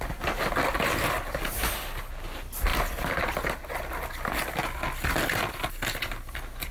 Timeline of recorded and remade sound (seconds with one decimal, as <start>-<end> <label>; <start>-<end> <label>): 0.0-6.7 recorded